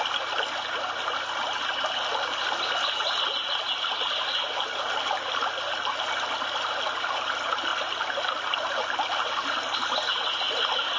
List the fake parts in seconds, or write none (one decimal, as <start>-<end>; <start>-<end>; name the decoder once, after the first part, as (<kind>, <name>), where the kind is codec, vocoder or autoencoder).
none